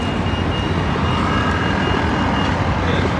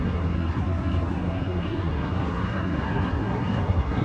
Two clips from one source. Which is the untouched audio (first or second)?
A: first